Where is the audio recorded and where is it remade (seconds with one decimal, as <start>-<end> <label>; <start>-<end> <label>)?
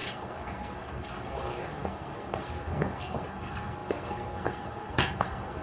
0.0-5.6 remade